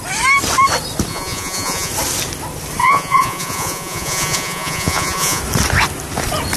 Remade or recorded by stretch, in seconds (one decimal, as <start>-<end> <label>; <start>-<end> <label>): 0.0-1.1 recorded; 1.1-1.9 remade; 1.9-2.8 recorded; 2.8-5.4 remade; 5.4-6.6 recorded